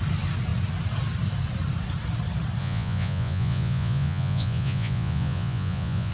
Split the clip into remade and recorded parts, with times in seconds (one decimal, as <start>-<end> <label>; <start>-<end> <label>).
0.0-2.6 recorded; 2.6-6.1 remade